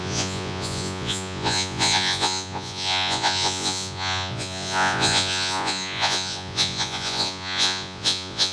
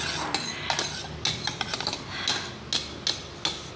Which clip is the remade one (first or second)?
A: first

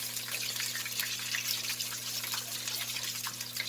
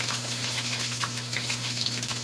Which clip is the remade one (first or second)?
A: second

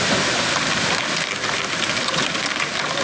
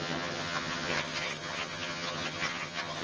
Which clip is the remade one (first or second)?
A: second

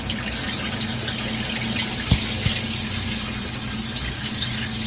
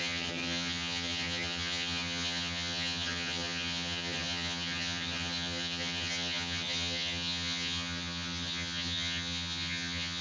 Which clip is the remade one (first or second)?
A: second